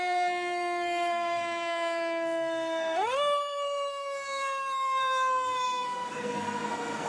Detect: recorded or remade remade